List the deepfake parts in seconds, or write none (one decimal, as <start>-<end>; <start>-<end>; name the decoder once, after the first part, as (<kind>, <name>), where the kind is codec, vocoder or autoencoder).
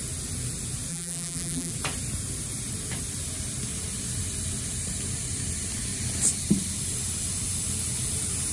0.9-1.7 (vocoder, BigVGAN v2)